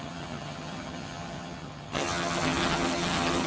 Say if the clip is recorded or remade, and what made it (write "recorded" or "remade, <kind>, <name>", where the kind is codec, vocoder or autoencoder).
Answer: remade, vocoder, HiFi-GAN